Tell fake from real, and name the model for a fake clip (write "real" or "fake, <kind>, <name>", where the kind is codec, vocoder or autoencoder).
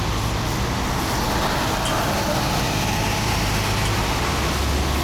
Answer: real